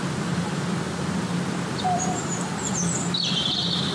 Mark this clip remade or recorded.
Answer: remade